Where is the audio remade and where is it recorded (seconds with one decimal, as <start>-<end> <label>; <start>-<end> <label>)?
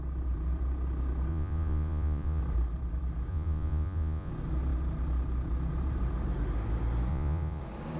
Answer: 0.0-1.3 recorded; 1.3-2.4 remade; 2.4-3.3 recorded; 3.3-4.3 remade; 4.3-7.1 recorded; 7.1-7.6 remade; 7.6-8.0 recorded